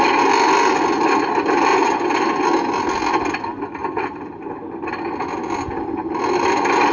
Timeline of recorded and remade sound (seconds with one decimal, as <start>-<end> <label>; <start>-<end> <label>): 0.0-6.9 recorded